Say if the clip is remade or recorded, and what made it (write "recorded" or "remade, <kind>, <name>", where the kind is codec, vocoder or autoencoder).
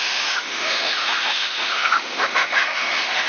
remade, autoencoder, DAC-VAE